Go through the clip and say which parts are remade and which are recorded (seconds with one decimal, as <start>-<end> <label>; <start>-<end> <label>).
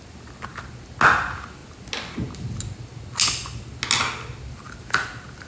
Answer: 0.0-5.5 recorded